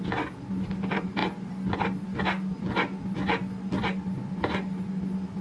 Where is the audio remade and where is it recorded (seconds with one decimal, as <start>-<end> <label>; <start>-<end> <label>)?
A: 0.0-5.4 recorded